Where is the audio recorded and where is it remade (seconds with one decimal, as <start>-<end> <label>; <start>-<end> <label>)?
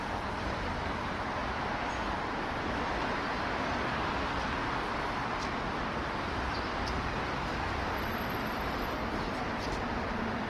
0.0-1.4 remade; 1.4-6.5 recorded; 6.5-10.5 remade